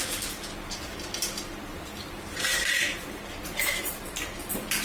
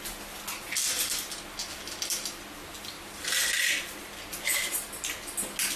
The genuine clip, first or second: second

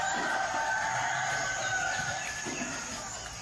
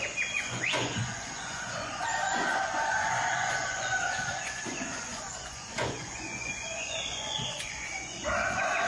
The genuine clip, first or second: first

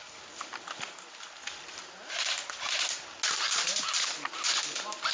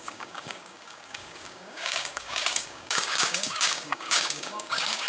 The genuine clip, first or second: first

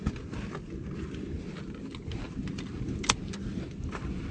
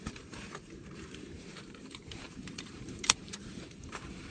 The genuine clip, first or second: first